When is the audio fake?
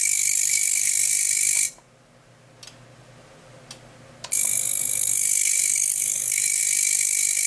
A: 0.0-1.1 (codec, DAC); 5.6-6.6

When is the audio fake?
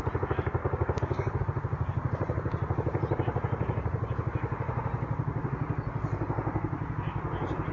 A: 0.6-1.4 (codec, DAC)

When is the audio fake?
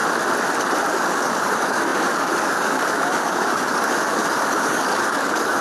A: 0.9-5.6 (codec, DAC)